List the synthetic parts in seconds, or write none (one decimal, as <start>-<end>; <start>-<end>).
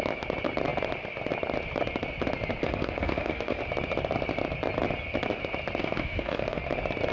2.6-3.6; 5.8-6.6